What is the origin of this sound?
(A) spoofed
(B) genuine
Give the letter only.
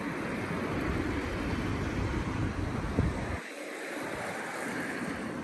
B